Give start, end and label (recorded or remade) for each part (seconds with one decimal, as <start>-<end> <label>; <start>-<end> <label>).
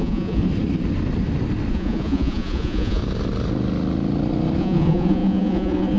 0.0-0.4 remade; 0.4-1.7 recorded; 1.7-3.0 remade; 3.0-4.6 recorded; 4.6-6.0 remade